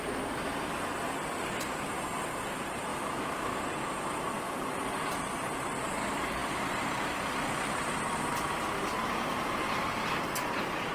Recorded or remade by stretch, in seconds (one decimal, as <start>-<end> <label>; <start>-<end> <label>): 0.0-2.9 recorded; 2.9-3.6 remade; 3.6-10.9 recorded